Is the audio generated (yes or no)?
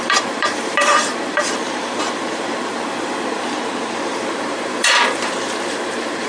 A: yes